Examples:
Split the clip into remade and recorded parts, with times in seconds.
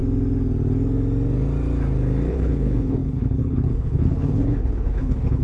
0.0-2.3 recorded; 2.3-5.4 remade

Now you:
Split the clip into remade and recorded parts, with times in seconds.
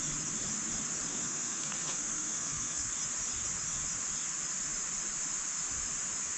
0.0-1.1 recorded; 1.1-2.9 remade; 2.9-6.4 recorded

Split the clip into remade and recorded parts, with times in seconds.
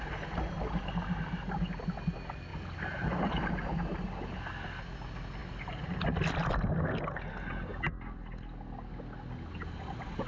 0.0-10.3 recorded